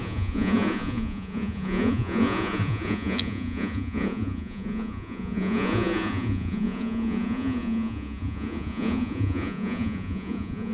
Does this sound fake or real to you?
fake